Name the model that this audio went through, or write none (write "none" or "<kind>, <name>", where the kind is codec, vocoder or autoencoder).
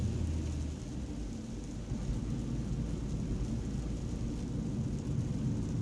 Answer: none